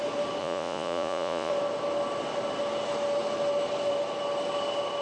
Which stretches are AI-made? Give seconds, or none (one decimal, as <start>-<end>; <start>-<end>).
0.4-1.5